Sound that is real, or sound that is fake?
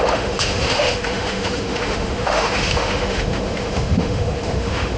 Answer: fake